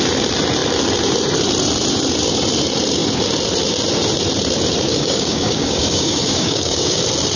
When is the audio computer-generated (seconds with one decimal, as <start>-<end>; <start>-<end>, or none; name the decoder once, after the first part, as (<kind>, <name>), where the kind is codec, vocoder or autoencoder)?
4.9-7.0 (codec, DAC)